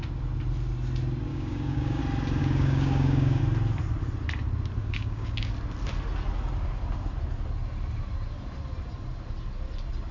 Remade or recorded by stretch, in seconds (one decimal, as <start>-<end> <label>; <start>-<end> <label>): 0.0-1.3 recorded; 1.3-2.0 remade; 2.0-2.4 recorded; 2.4-3.4 remade; 3.4-4.8 recorded; 4.8-5.5 remade; 5.5-10.1 recorded